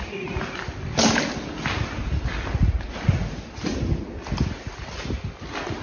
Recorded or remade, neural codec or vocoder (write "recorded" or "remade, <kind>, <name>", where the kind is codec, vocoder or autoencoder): recorded